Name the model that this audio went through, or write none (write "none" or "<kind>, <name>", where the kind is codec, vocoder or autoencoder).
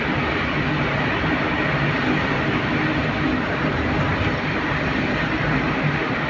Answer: none